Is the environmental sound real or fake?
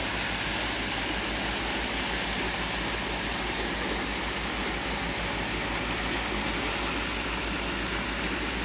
real